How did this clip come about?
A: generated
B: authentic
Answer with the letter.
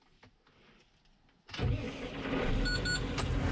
B